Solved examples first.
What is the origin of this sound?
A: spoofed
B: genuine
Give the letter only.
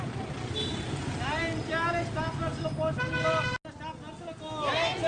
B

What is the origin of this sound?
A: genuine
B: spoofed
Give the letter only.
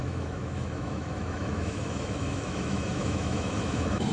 B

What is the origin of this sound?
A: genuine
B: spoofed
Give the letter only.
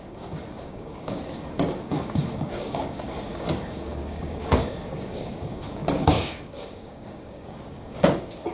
B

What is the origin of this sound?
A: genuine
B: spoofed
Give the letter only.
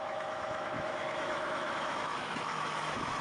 B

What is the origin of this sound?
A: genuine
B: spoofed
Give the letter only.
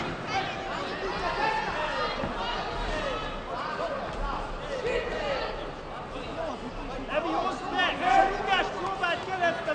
A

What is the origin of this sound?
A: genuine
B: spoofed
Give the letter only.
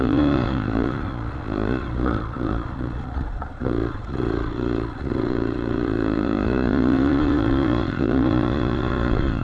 B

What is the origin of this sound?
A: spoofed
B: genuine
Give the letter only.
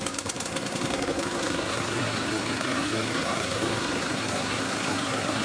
A